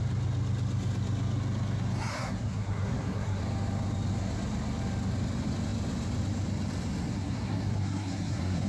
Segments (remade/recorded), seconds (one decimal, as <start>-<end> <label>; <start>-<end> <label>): 0.0-2.1 recorded; 2.1-3.4 remade; 3.4-7.1 recorded; 7.1-8.7 remade